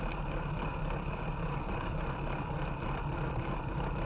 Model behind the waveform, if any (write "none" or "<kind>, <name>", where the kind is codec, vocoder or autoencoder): none